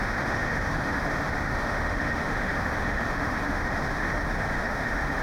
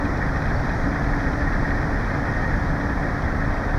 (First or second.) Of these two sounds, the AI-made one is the first